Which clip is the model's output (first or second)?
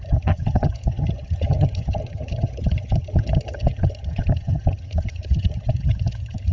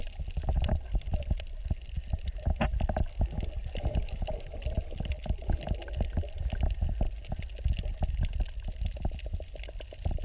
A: first